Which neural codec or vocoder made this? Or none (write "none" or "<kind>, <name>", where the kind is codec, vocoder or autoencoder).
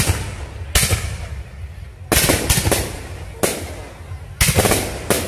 none